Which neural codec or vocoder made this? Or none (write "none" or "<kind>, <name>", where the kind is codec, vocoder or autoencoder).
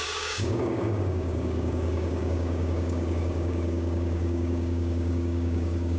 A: codec, DAC